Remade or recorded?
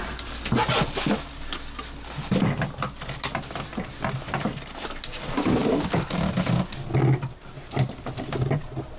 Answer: recorded